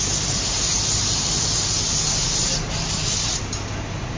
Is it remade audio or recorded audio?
recorded